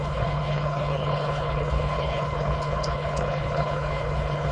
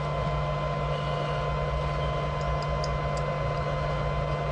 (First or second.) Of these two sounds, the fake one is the first